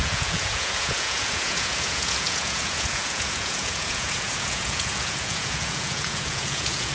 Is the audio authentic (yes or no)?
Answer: no